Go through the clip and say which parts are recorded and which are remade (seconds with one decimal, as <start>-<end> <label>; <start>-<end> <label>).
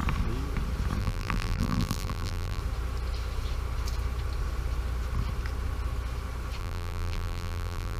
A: 0.0-1.0 recorded; 1.0-2.6 remade; 2.6-6.6 recorded; 6.6-8.0 remade